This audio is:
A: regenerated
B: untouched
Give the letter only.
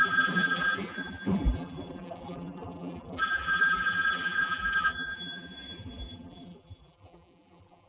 A